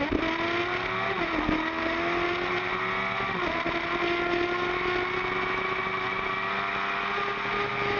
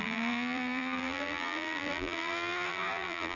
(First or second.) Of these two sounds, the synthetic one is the second